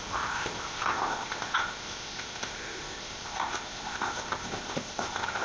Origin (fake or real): fake